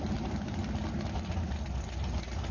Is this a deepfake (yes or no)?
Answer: no